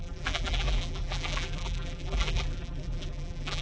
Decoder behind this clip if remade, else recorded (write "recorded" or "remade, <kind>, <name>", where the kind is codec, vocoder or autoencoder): remade, vocoder, BigVGAN v2